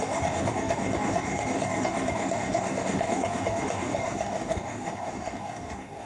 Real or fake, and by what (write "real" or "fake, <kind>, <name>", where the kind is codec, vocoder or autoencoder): fake, codec, DAC